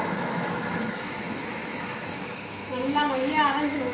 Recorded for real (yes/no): no